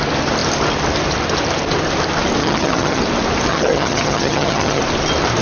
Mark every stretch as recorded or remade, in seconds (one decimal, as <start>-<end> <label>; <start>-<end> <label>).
0.0-2.4 recorded; 2.4-3.0 remade; 3.0-3.5 recorded; 3.5-4.8 remade; 4.8-5.4 recorded